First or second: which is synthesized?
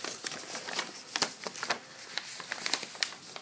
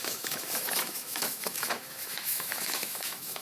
second